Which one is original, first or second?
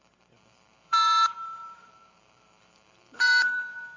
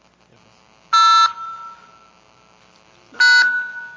second